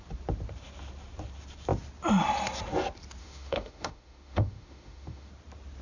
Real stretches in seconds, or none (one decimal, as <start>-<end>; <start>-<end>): 0.0-3.2; 5.3-5.8